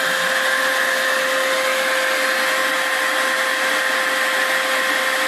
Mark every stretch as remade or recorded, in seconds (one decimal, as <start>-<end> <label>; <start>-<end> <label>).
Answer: 0.0-5.3 recorded